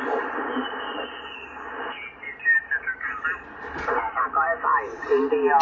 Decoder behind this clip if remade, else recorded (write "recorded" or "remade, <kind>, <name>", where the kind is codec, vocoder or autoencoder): recorded